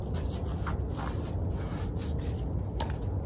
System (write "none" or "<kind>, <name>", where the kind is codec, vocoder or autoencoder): none